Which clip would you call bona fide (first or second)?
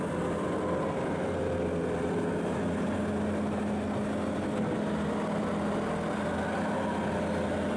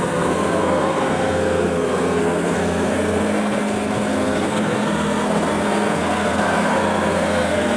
first